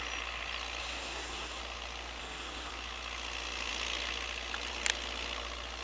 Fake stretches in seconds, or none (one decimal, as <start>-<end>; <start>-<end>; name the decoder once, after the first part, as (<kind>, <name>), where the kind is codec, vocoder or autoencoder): 0.8-1.6 (codec, SNAC); 2.2-2.7